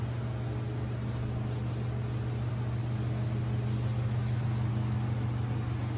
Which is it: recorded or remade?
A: recorded